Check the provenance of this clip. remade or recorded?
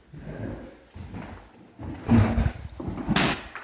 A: recorded